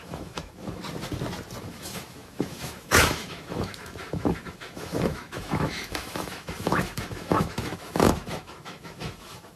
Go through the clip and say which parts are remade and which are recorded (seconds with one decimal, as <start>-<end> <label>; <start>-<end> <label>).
0.0-0.8 remade; 0.8-1.6 recorded; 1.6-9.6 remade